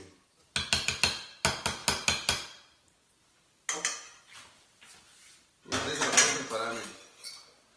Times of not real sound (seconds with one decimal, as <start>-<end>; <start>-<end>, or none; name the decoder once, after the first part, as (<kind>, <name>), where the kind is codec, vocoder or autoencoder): none